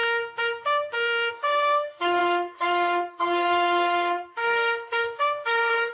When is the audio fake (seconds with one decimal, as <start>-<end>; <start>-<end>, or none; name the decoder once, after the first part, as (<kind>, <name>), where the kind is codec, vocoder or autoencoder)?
1.3-5.9 (codec, DAC)